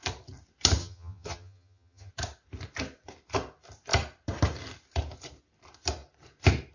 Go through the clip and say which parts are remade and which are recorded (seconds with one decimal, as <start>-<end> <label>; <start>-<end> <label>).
0.0-0.8 recorded; 0.8-2.1 remade; 2.1-6.7 recorded